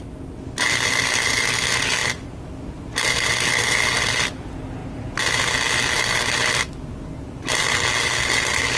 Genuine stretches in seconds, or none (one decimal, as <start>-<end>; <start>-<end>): 0.0-8.8